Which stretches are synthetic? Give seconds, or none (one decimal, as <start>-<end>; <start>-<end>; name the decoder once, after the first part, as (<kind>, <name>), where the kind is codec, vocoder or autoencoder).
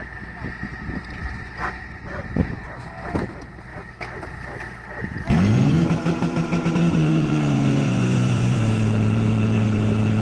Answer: 1.2-2.9 (vocoder, Vocos); 5.5-10.2